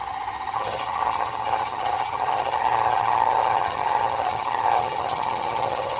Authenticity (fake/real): fake